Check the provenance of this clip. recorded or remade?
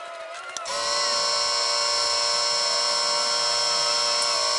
recorded